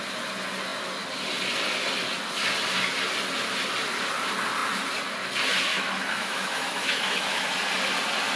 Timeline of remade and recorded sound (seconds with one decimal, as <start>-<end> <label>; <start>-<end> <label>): 0.0-5.7 recorded; 5.7-7.5 remade; 7.5-8.4 recorded